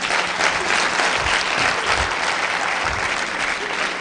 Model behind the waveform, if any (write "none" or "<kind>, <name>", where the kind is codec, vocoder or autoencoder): none